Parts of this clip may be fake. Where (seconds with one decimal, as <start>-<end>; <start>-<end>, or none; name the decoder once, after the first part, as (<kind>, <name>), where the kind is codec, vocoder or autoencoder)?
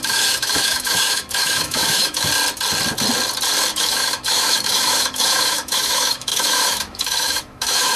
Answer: 0.0-2.3 (autoencoder, DAC-VAE); 3.7-8.0